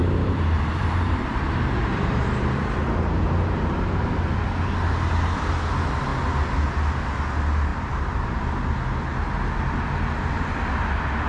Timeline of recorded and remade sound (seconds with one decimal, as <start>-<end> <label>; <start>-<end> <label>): 0.0-4.1 remade; 4.1-7.7 recorded; 7.7-8.4 remade; 8.4-11.3 recorded